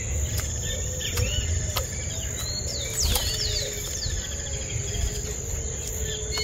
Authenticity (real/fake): real